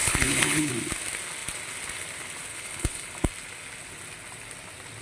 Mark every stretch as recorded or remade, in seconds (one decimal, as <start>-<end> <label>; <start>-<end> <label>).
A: 0.0-0.7 remade; 0.7-2.5 recorded; 2.5-3.1 remade; 3.1-5.0 recorded